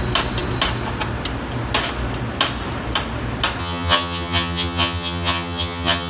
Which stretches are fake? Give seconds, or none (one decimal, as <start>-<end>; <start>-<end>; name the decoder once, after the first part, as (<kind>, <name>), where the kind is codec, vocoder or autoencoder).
3.6-6.1 (vocoder, HiFi-GAN)